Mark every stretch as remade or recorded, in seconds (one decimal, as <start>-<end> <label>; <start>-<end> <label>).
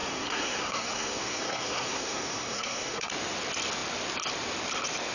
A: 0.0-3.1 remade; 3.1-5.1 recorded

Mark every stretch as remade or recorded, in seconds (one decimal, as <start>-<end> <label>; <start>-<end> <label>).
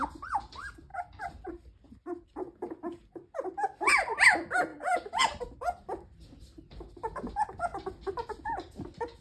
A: 0.0-0.9 recorded; 0.9-1.5 remade; 1.5-4.7 recorded; 4.7-5.4 remade; 5.4-7.7 recorded; 7.7-8.5 remade; 8.5-9.2 recorded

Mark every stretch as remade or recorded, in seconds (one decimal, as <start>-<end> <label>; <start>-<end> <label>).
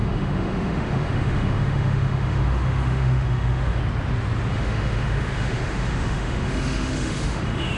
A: 0.0-3.8 remade; 3.8-4.5 recorded; 4.5-7.8 remade